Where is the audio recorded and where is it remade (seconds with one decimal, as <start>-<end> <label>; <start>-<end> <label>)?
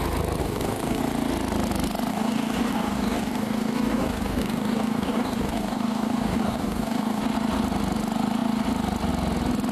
0.0-0.4 recorded; 0.4-1.0 remade; 1.0-2.1 recorded; 2.1-7.2 remade; 7.2-9.7 recorded